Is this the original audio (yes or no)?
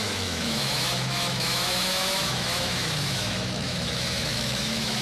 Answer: no